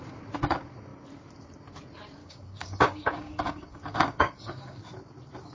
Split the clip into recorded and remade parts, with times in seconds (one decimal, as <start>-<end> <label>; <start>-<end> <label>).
0.0-2.2 recorded; 2.2-4.8 remade; 4.8-5.5 recorded